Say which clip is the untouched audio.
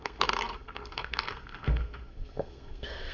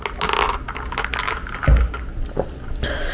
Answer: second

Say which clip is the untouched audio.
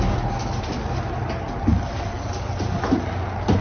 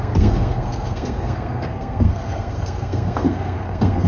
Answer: first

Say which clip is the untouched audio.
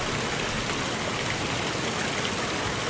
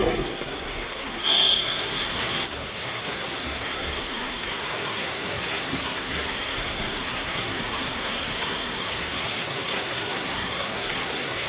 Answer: first